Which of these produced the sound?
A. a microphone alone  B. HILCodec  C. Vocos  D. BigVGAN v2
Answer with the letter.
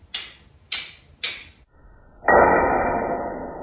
A